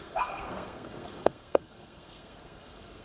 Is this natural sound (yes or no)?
no